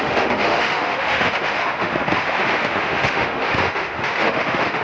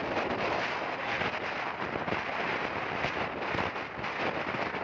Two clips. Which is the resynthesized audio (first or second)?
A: first